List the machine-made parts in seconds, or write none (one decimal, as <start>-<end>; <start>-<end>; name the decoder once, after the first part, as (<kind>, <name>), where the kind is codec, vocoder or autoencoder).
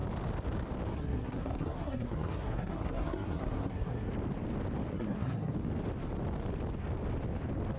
0.9-4.1 (codec, SNAC); 4.9-5.5